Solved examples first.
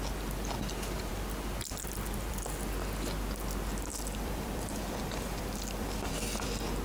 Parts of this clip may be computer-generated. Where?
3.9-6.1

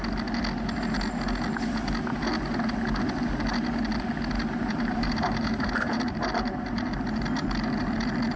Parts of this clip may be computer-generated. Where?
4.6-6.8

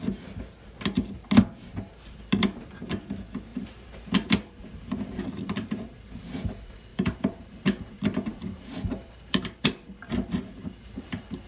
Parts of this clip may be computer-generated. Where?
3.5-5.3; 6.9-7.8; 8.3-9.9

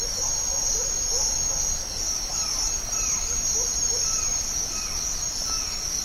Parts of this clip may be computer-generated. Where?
2.3-4.4

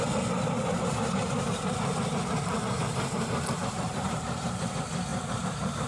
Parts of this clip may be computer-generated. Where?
2.8-4.5; 5.1-5.9